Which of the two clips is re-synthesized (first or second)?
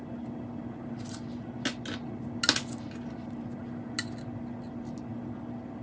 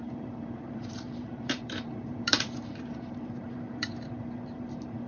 second